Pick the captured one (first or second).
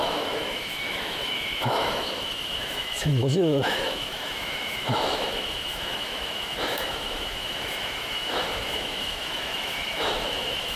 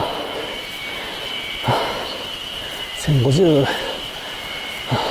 second